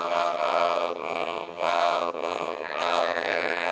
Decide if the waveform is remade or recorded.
remade